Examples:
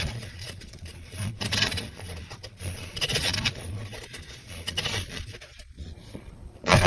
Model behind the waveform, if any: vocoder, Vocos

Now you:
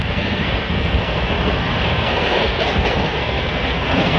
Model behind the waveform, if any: codec, SNAC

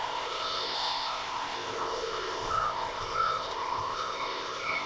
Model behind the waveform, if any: codec, ZipCodec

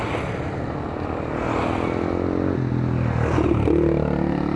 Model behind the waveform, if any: none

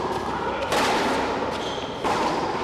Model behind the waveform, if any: none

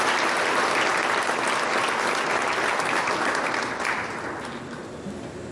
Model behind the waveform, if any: none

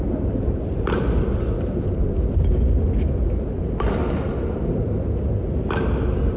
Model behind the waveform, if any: none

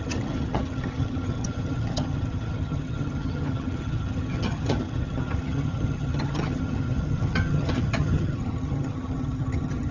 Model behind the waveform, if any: vocoder, HiFi-GAN